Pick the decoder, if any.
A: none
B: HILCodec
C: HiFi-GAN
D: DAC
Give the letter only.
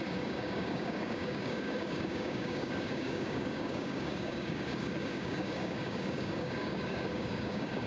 D